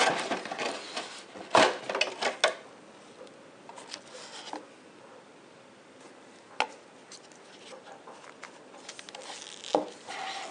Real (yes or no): yes